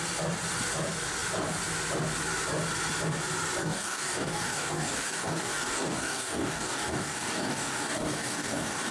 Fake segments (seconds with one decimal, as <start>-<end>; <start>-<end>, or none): 3.6-8.9